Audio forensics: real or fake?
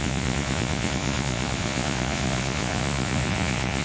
fake